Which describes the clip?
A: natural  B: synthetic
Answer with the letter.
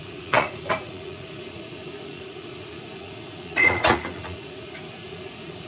B